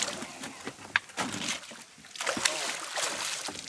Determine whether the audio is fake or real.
real